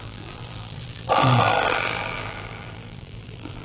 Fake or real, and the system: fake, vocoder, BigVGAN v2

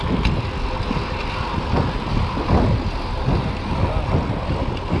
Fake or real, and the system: real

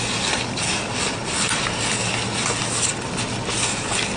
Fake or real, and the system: real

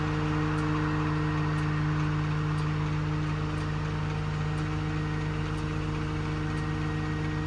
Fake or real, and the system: real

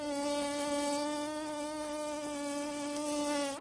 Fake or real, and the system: real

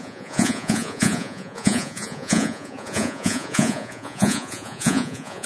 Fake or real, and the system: fake, vocoder, Vocos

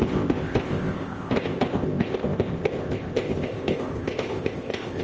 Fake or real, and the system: fake, codec, ZipCodec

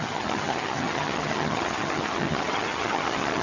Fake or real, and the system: fake, vocoder, HiFi-GAN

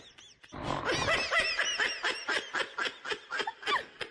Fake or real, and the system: real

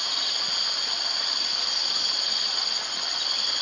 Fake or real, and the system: real